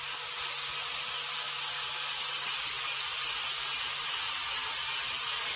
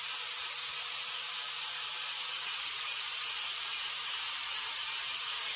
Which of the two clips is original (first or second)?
first